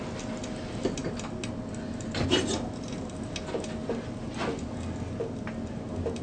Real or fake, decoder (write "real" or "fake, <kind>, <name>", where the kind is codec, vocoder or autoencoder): real